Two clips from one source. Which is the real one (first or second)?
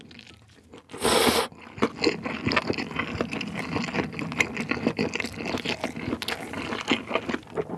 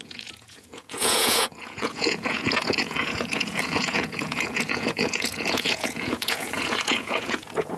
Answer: first